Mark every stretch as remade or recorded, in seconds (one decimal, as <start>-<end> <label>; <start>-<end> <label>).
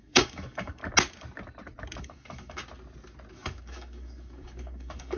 0.0-0.8 remade; 0.8-2.0 recorded; 2.0-2.6 remade; 2.6-3.3 recorded; 3.3-5.2 remade